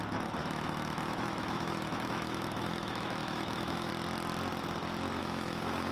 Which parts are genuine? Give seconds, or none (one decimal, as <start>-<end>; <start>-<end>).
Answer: 0.0-0.4; 3.9-5.2